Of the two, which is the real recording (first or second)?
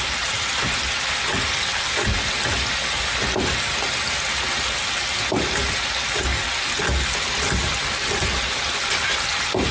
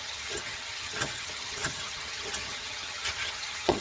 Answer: first